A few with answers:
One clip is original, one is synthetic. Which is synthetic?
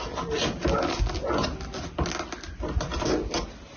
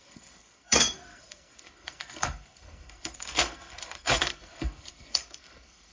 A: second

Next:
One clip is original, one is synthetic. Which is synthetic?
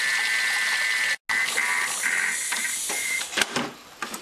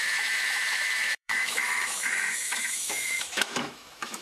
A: second